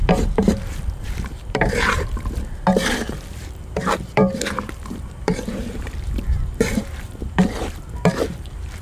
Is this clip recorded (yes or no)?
no